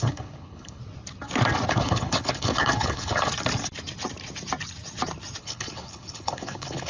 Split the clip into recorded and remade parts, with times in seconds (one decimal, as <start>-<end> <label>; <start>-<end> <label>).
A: 0.0-0.8 remade; 0.8-1.7 recorded; 1.7-3.3 remade; 3.3-5.4 recorded; 5.4-6.9 remade